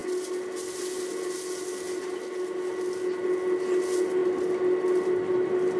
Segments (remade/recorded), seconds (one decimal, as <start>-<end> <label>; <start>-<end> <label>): 0.0-5.8 recorded